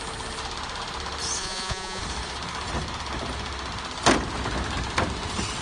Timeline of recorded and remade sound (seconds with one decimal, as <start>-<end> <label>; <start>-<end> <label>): 0.0-1.4 recorded; 1.4-2.0 remade; 2.0-5.6 recorded